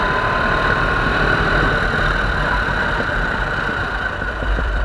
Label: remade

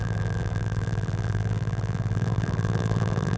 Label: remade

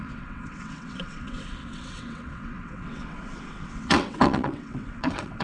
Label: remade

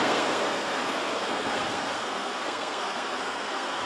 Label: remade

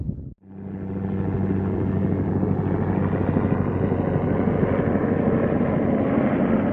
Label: recorded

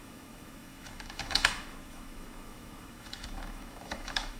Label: remade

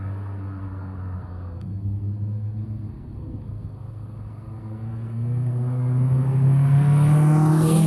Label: remade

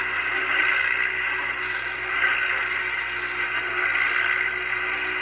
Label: recorded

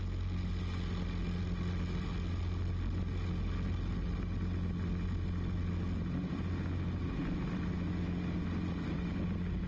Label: recorded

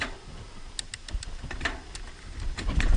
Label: recorded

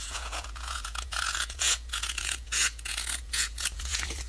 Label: remade